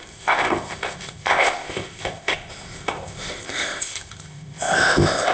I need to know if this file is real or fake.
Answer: fake